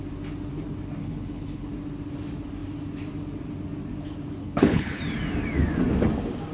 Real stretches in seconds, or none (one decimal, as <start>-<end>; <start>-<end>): 0.0-1.0; 1.7-4.4; 5.0-6.5